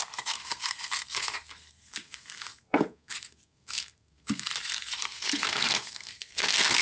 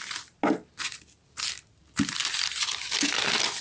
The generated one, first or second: first